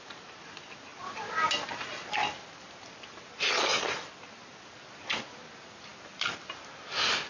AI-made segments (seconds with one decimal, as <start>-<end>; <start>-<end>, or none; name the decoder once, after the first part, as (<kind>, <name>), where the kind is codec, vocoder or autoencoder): none